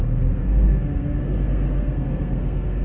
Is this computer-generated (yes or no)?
yes